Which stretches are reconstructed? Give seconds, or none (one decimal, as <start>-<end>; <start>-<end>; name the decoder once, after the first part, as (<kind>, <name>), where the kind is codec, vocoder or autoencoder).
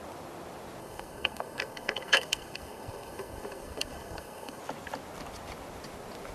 0.8-4.6 (codec, SNAC)